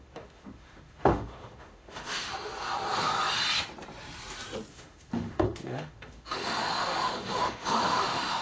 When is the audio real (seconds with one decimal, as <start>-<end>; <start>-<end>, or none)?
2.3-4.7